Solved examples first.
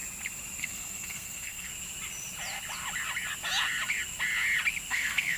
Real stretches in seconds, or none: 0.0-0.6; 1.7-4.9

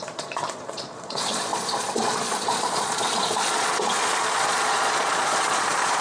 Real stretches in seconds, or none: none

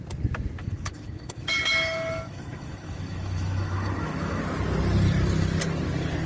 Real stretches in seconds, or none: 0.0-0.6; 4.4-6.3

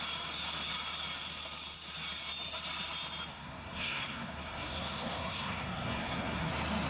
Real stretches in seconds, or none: 0.0-3.3; 6.5-6.9

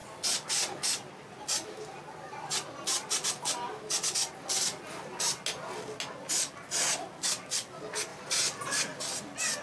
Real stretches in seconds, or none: 0.0-9.6

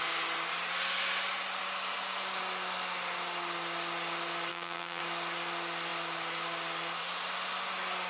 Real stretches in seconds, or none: 0.0-4.5; 5.0-8.1

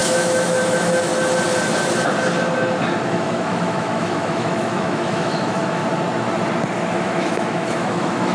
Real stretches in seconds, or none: 1.1-3.1; 5.8-6.9

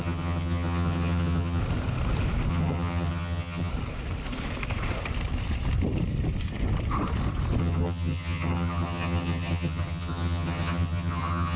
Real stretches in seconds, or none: 1.6-2.5; 3.7-7.6